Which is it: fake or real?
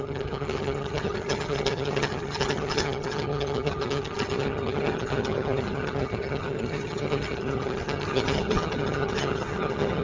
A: fake